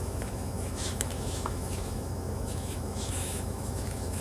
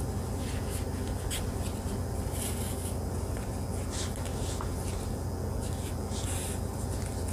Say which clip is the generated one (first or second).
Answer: first